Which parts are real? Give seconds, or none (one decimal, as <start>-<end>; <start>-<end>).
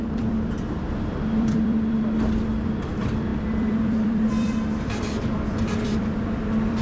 none